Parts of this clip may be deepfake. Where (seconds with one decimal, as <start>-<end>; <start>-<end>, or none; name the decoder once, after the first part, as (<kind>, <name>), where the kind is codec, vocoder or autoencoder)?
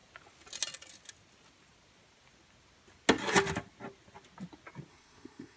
4.9-5.6 (codec, SNAC)